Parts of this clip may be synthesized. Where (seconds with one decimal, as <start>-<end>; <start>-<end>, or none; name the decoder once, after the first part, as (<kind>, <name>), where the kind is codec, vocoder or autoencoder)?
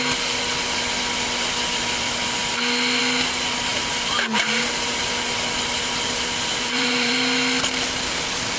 3.7-5.0 (vocoder, BigVGAN v2); 6.5-7.1